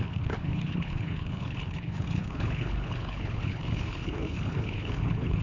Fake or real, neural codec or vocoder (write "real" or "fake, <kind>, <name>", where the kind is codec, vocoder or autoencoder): fake, codec, HILCodec